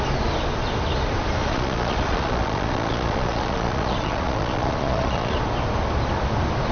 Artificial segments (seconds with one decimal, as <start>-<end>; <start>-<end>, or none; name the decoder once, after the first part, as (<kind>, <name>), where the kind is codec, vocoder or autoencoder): 1.4-5.4 (vocoder, Vocos)

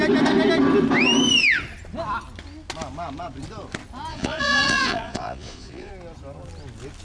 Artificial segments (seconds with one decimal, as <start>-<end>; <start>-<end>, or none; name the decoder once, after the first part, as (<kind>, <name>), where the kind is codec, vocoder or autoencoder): 4.1-5.9 (vocoder, Vocos)

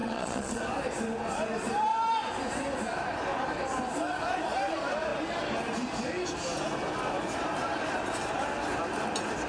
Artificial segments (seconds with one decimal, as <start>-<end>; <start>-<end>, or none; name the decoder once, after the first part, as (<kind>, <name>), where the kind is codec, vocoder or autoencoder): 0.0-0.6 (vocoder, Vocos)

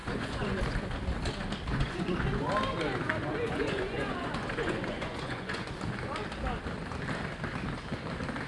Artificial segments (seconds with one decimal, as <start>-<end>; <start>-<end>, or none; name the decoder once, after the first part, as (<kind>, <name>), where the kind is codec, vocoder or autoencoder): 0.0-0.6 (vocoder, Vocos); 1.7-2.3; 3.2-5.7

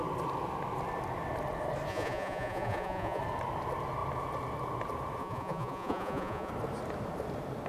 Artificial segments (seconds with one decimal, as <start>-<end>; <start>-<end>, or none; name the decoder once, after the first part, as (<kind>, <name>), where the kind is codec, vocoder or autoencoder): 1.9-3.2 (vocoder, Vocos); 5.2-6.5

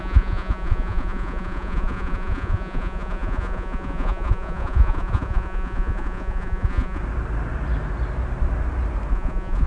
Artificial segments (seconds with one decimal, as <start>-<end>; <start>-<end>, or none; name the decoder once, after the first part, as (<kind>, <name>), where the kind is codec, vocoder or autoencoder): 0.0-7.0 (vocoder, Vocos); 9.1-9.7

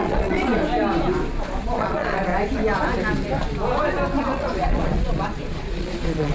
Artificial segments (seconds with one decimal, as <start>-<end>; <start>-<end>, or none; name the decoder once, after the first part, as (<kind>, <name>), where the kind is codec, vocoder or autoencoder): 0.0-0.5 (vocoder, Vocos); 1.6-2.3; 4.2-6.3